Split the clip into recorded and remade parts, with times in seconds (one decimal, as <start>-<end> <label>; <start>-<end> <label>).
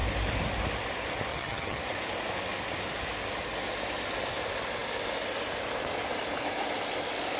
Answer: 0.0-1.3 recorded; 1.3-1.8 remade; 1.8-7.4 recorded